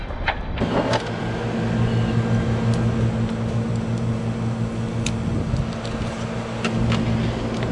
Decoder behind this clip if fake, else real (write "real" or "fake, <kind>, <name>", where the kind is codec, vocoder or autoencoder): real